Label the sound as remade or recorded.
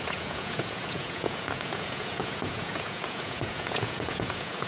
remade